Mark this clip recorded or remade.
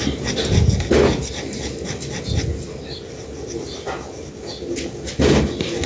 recorded